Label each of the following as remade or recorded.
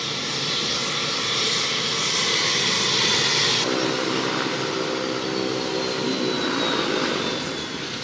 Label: recorded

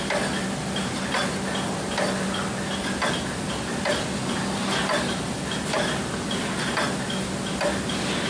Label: recorded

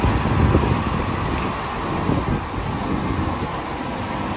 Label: recorded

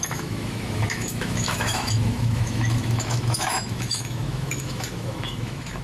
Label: remade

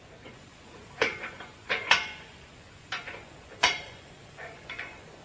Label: remade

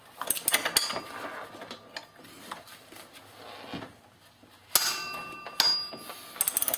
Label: recorded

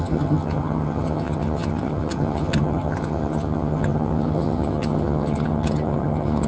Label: remade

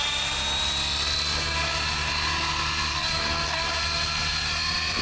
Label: recorded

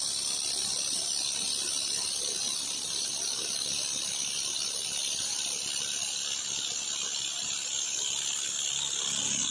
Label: recorded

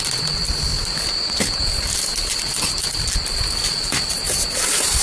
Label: recorded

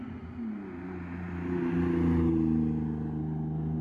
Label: recorded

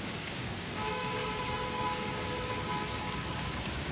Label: remade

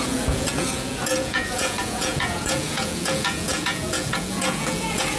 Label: remade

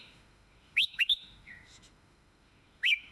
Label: remade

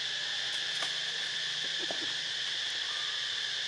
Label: recorded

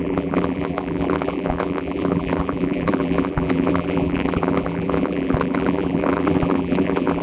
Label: remade